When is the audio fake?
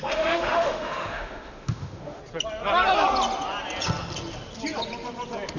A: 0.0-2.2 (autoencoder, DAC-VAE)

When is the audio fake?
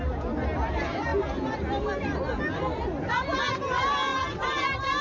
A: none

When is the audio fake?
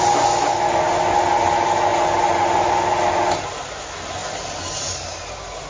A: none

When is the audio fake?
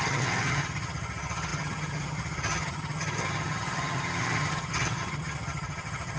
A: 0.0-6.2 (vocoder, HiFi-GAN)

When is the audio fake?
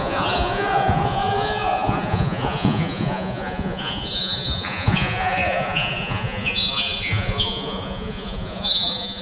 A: 0.0-9.2 (vocoder, Vocos)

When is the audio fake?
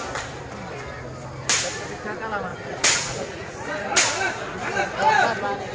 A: 2.5-4.0 (vocoder, Vocos)